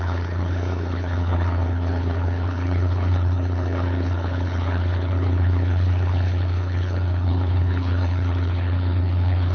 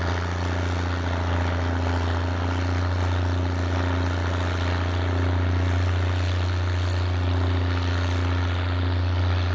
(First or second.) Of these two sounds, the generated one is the first